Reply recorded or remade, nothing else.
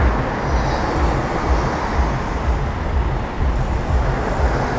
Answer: recorded